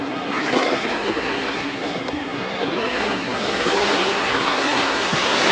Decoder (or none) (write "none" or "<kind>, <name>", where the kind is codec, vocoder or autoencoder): codec, SNAC